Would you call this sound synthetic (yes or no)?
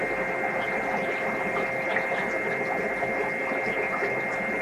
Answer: no